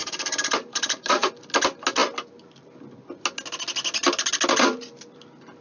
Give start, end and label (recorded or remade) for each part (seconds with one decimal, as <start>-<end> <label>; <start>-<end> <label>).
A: 0.0-1.3 remade; 1.3-5.6 recorded